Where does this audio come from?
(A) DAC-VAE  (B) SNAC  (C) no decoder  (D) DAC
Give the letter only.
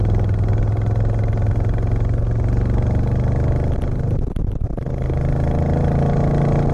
C